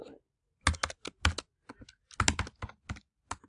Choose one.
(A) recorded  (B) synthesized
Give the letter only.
A